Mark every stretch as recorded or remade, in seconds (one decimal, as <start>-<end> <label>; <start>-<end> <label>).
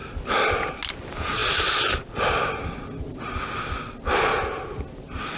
0.0-5.4 recorded